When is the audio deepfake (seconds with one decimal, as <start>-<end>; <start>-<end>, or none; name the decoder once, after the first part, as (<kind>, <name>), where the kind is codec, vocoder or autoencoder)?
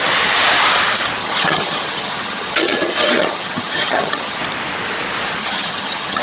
1.2-4.4 (vocoder, HiFi-GAN); 5.4-6.2